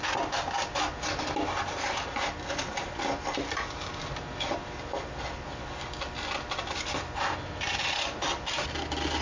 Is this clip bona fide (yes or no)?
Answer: yes